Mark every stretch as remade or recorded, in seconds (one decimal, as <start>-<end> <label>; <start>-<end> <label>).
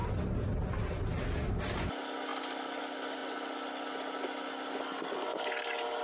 0.0-6.0 recorded